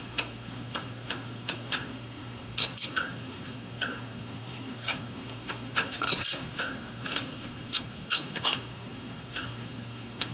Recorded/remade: remade